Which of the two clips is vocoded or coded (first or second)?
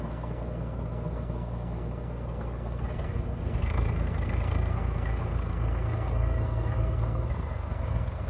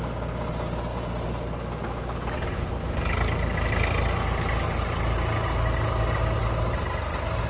first